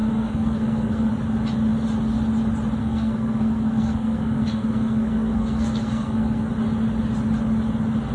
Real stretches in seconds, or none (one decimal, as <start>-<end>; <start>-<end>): 1.1-2.8; 6.5-8.1